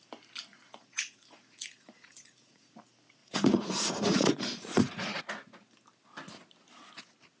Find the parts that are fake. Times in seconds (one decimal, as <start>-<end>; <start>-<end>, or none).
0.5-2.7; 3.2-5.2